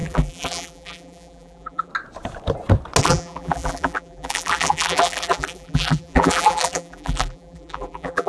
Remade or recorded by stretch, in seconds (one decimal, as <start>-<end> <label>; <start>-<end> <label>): 0.0-1.9 remade; 1.9-3.0 recorded; 3.0-8.3 remade